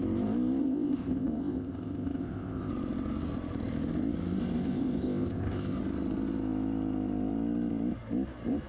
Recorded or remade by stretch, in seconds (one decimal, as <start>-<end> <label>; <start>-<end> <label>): 0.0-0.6 recorded; 0.6-2.7 remade; 2.7-4.4 recorded; 4.4-5.8 remade; 5.8-8.7 recorded